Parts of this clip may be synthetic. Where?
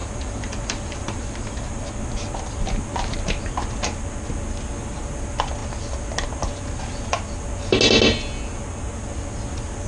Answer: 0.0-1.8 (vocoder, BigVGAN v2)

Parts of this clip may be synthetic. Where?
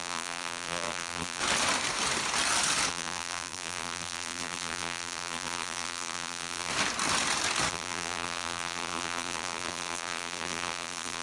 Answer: 0.0-1.4 (vocoder, BigVGAN v2); 2.9-6.7; 7.7-11.2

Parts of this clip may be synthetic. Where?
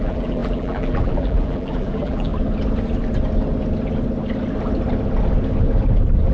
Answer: 0.0-2.3 (vocoder, BigVGAN v2)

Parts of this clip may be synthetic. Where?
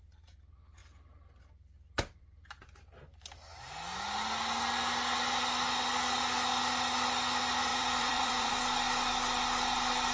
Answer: 7.7-8.5 (vocoder, BigVGAN v2)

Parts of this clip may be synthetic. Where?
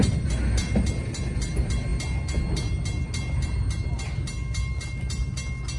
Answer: none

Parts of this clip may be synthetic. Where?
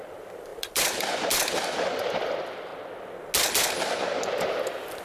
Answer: 0.0-2.7 (vocoder, BigVGAN v2)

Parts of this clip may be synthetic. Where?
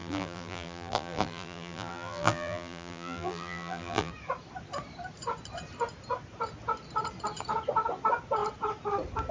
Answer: 0.0-4.1 (vocoder, BigVGAN v2)